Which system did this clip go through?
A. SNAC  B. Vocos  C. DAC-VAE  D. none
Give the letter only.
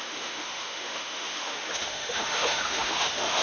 C